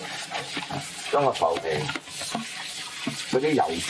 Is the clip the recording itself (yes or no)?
yes